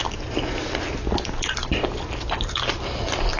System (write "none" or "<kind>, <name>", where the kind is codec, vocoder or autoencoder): none